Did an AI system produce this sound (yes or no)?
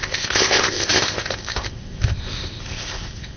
yes